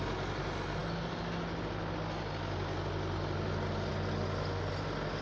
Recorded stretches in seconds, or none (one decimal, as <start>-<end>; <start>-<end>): 0.0-5.2

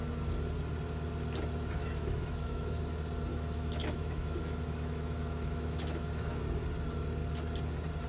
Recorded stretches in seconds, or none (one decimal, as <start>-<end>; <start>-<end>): 0.0-1.8; 2.8-3.3; 6.4-8.1